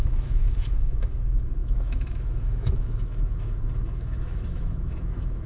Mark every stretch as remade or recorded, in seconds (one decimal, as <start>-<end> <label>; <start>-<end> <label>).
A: 0.0-5.5 remade